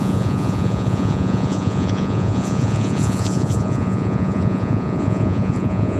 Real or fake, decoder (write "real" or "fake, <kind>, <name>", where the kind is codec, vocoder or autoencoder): fake, vocoder, Vocos